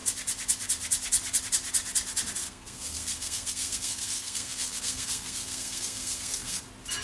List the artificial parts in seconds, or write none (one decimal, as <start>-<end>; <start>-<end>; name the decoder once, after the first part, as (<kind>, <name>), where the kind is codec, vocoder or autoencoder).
2.4-6.6 (codec, SNAC)